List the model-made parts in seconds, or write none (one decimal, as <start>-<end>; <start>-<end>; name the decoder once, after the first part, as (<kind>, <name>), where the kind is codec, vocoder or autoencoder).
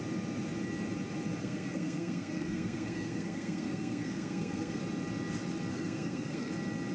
1.4-4.8 (codec, SNAC); 5.7-6.5